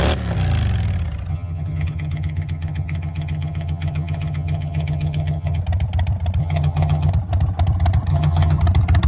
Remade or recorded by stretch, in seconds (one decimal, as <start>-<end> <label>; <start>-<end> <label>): 0.0-1.3 recorded; 1.3-5.6 remade; 5.6-6.4 recorded; 6.4-7.1 remade; 7.1-8.1 recorded; 8.1-8.6 remade; 8.6-9.1 recorded